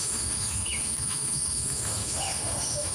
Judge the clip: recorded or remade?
remade